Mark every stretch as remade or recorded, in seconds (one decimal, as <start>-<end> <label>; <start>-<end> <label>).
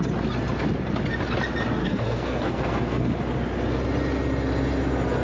0.0-1.8 recorded; 1.8-3.1 remade; 3.1-5.2 recorded